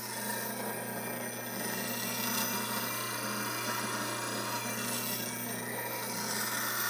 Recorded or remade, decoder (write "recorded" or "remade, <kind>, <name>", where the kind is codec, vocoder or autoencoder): recorded